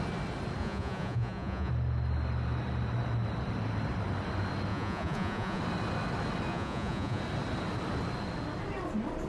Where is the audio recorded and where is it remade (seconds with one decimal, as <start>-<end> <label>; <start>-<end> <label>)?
0.0-0.6 recorded; 0.6-1.7 remade; 1.7-4.7 recorded; 4.7-5.6 remade; 5.6-6.5 recorded; 6.5-7.2 remade; 7.2-9.3 recorded